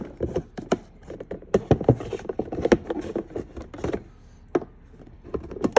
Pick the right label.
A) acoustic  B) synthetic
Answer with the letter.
A